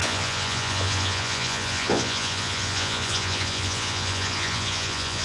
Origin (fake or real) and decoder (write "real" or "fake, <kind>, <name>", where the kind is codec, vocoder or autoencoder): fake, vocoder, Vocos